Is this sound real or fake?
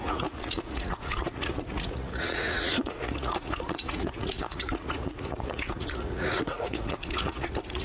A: fake